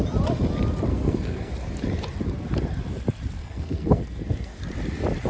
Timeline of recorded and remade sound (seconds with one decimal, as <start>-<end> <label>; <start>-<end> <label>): 0.0-0.9 recorded; 0.9-1.5 remade; 1.5-3.4 recorded; 3.4-4.6 remade; 4.6-5.3 recorded